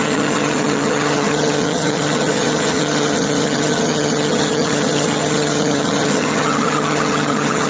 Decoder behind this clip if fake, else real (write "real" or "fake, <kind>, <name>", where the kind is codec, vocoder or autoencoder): fake, vocoder, HiFi-GAN